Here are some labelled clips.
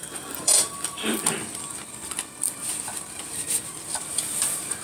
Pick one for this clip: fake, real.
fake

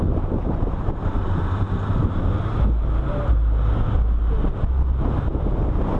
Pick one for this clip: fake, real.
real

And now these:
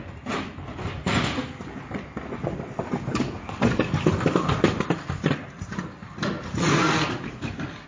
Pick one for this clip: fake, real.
real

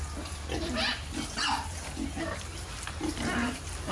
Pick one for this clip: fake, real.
real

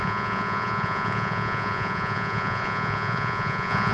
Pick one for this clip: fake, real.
fake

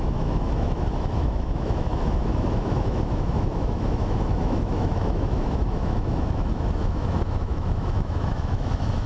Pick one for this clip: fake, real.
fake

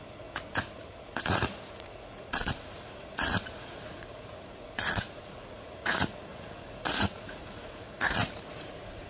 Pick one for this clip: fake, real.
fake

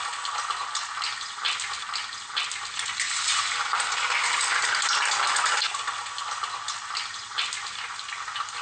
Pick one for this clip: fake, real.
real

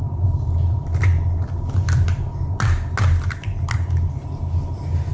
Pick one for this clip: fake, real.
real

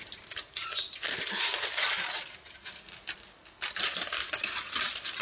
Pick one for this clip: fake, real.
real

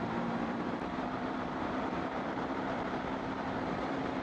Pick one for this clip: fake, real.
fake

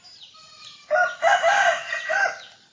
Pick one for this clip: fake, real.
real